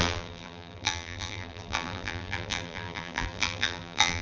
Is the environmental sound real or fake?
fake